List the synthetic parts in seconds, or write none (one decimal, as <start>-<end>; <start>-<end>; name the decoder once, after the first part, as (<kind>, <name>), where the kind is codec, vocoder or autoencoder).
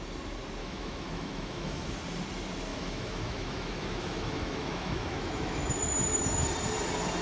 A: 0.6-1.9 (autoencoder, DAC-VAE); 2.7-5.7